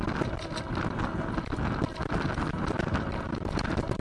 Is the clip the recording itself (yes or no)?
yes